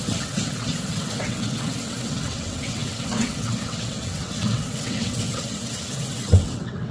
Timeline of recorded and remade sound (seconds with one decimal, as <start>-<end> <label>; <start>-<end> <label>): 0.0-6.9 remade